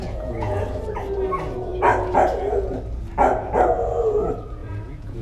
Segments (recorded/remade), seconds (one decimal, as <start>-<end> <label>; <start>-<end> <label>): 0.0-0.6 remade; 0.6-4.6 recorded; 4.6-5.2 remade